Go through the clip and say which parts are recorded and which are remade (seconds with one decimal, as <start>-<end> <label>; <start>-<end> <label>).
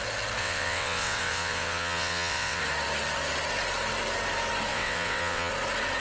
0.0-0.4 recorded; 0.4-2.6 remade; 2.6-4.7 recorded; 4.7-5.5 remade; 5.5-6.0 recorded